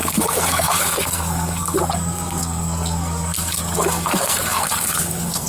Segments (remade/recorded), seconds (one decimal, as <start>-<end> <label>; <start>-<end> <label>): 0.0-5.5 remade